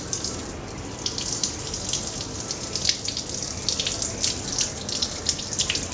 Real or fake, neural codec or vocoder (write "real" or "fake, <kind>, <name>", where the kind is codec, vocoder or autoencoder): real